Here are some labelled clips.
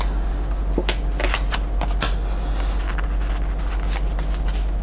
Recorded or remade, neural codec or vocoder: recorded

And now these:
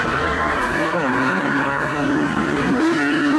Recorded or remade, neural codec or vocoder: remade, codec, SNAC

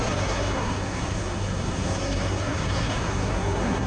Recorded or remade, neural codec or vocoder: remade, codec, SNAC